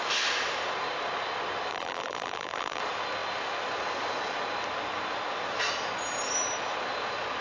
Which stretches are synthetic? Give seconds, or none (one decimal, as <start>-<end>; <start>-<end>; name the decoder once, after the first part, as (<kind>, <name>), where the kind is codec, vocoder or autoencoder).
1.7-2.8 (vocoder, BigVGAN v2)